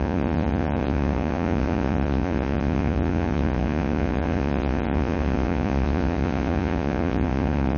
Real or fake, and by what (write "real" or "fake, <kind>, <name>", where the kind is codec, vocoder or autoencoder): fake, vocoder, Vocos